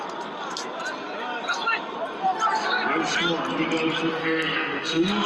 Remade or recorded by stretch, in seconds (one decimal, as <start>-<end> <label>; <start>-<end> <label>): 0.0-4.2 recorded; 4.2-5.3 remade